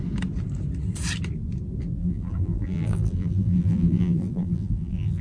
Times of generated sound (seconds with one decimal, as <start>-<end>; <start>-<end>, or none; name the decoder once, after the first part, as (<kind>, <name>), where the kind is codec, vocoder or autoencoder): 2.0-5.2 (vocoder, BigVGAN v2)